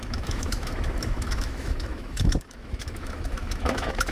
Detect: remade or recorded remade